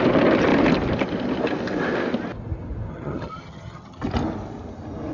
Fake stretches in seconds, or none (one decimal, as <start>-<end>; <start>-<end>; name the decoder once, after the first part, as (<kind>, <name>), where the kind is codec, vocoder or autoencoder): 2.9-4.0 (vocoder, HiFi-GAN)